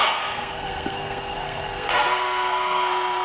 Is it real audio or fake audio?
fake